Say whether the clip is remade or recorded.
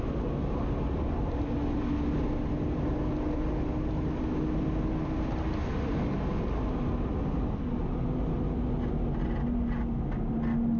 recorded